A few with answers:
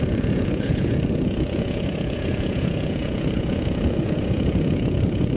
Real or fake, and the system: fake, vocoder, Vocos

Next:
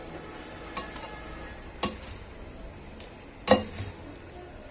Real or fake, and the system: real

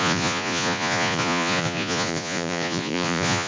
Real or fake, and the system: fake, vocoder, Vocos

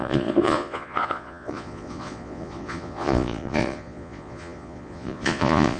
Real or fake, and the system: fake, vocoder, Vocos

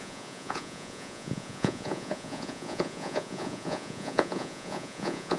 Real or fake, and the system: fake, vocoder, Vocos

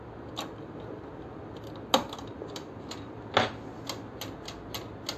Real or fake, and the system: real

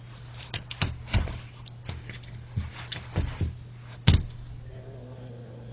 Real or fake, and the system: real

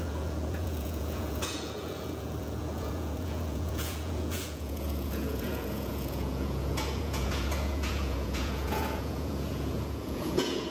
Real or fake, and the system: fake, vocoder, Vocos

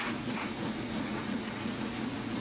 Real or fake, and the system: fake, vocoder, Vocos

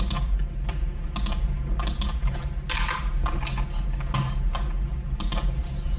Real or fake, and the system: real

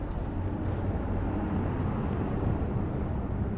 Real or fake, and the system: real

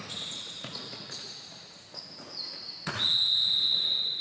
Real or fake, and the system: fake, vocoder, Vocos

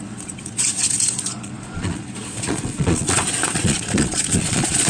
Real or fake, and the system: fake, vocoder, Vocos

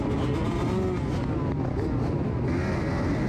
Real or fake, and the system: real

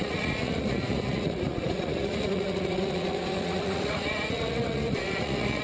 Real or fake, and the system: fake, vocoder, Vocos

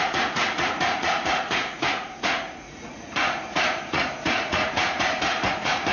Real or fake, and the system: fake, vocoder, Vocos